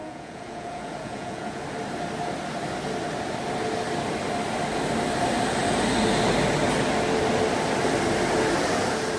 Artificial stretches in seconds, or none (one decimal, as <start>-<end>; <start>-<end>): 0.0-1.6